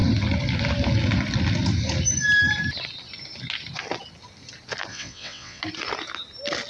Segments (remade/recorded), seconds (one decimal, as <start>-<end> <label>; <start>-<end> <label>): 0.0-4.9 recorded; 4.9-5.6 remade; 5.6-6.7 recorded